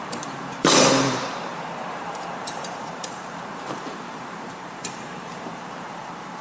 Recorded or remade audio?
remade